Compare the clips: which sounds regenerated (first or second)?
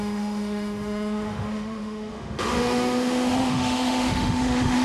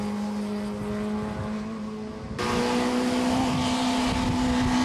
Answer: first